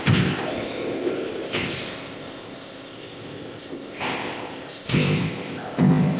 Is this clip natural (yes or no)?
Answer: no